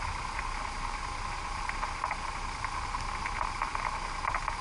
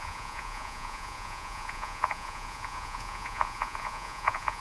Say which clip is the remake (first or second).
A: second